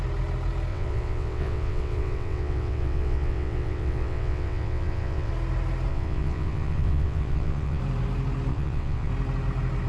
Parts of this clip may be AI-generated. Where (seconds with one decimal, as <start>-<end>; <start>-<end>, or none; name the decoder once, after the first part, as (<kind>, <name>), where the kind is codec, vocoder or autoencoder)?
0.7-5.3 (vocoder, WaveNeXt); 5.9-7.8; 8.5-9.1